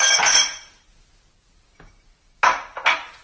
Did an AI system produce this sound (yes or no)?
no